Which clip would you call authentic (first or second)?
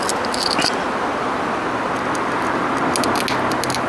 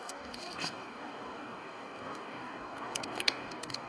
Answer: first